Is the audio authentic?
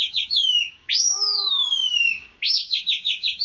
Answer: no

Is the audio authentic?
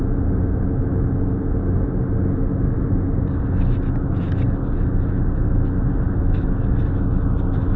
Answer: yes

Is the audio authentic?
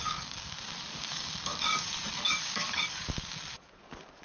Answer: no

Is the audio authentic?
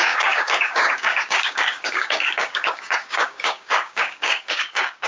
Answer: no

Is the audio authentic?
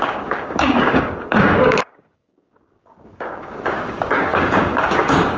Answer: no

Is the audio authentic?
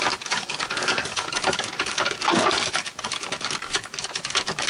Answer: no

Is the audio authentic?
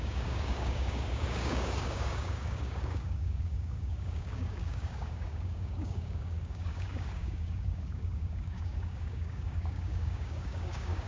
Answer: no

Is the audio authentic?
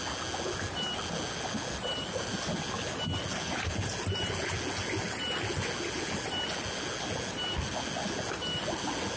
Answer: yes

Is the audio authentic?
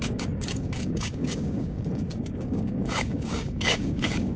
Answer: no